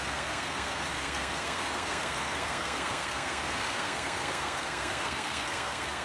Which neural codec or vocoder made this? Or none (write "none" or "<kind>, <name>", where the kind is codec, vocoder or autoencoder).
codec, SNAC